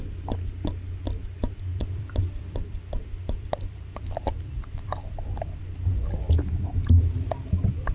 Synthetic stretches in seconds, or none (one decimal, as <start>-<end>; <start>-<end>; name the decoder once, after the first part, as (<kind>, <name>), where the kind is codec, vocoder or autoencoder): 1.2-5.6 (vocoder, BigVGAN v2)